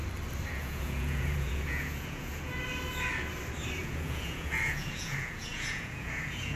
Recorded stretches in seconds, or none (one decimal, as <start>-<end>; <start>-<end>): 0.0-0.5; 2.5-3.8